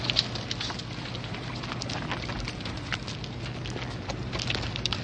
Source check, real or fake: real